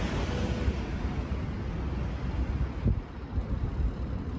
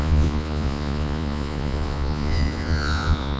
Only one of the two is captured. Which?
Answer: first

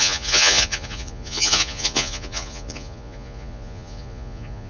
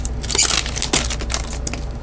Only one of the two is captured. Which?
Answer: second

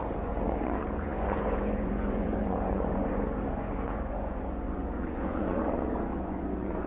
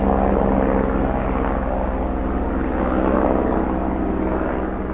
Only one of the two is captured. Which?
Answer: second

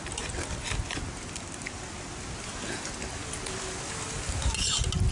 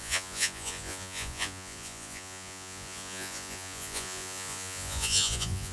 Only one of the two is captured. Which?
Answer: first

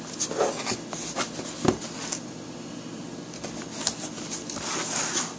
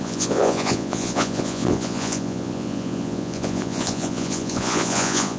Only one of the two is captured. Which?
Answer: first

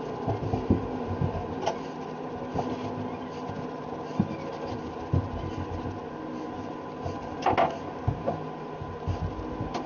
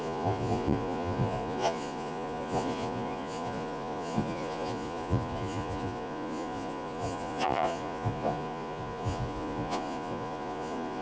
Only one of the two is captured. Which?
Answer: first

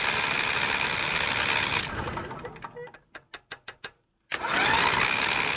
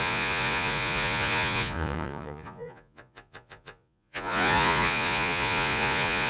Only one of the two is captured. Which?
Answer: first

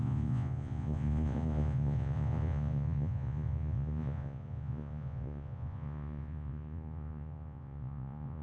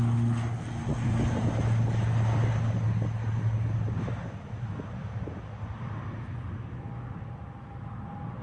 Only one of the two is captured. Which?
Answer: second